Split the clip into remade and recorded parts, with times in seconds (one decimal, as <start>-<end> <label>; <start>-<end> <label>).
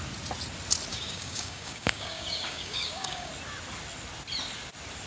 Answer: 0.0-0.9 recorded; 0.9-3.3 remade; 3.3-5.1 recorded